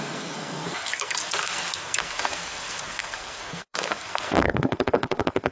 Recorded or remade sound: remade